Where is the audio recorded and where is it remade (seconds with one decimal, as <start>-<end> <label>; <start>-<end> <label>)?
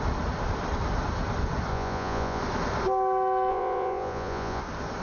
0.0-1.7 recorded; 1.7-2.4 remade; 2.4-3.5 recorded; 3.5-4.6 remade; 4.6-5.0 recorded